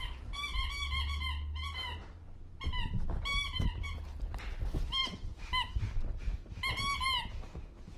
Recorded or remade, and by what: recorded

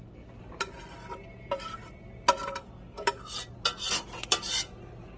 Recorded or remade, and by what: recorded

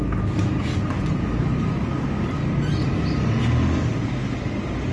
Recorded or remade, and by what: recorded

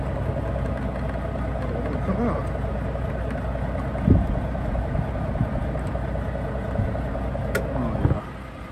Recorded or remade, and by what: recorded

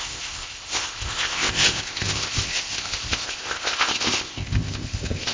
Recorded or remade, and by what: remade, codec, ZipCodec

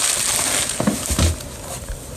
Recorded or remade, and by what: recorded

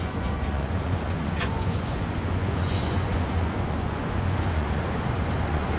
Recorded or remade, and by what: remade, vocoder, Vocos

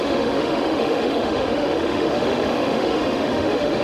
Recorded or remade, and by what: remade, autoencoder, DAC-VAE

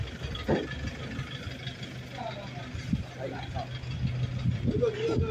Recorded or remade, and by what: recorded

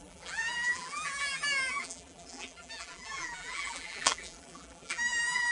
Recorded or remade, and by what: remade, vocoder, BigVGAN v2